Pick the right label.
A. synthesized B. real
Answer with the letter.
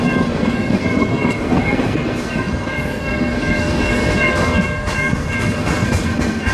A